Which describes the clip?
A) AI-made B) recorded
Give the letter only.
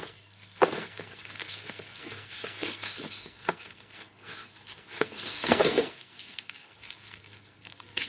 A